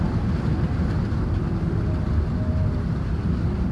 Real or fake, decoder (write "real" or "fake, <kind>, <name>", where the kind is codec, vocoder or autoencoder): real